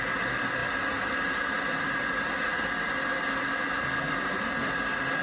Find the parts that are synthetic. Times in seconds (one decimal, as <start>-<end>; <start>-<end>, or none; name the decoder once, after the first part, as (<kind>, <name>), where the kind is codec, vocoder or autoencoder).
none